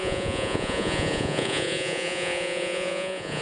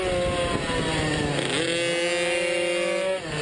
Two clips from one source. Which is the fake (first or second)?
first